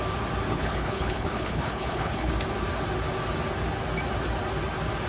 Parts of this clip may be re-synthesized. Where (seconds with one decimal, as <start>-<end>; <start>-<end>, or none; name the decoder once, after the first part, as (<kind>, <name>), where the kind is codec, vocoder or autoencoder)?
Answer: 0.5-2.3 (codec, HILCodec)